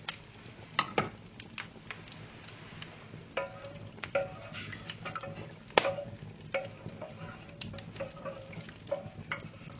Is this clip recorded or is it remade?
recorded